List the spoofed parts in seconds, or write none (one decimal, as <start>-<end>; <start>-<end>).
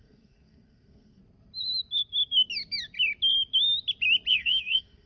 0.0-1.2; 4.3-5.1